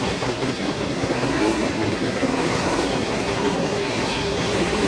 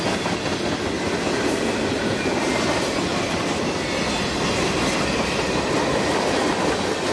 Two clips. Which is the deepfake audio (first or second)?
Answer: first